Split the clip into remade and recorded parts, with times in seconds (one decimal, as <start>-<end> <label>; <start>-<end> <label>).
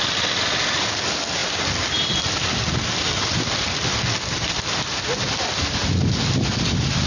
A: 0.0-7.1 recorded